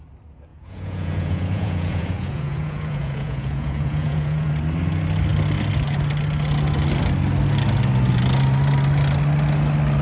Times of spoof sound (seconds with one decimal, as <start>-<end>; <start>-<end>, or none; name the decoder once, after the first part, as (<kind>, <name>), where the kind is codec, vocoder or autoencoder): 0.5-4.5 (vocoder, Vocos)